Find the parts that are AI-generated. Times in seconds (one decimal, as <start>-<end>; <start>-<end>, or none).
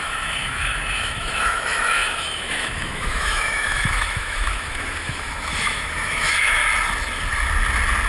0.0-6.6